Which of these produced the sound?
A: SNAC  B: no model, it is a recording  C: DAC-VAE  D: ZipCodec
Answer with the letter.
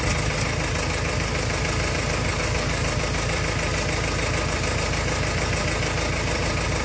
B